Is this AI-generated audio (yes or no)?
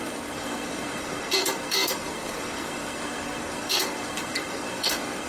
yes